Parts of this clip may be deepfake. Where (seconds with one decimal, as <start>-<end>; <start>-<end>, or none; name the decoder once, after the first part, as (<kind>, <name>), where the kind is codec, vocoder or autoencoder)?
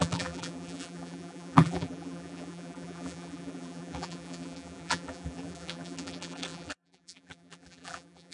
0.0-8.3 (vocoder, BigVGAN v2)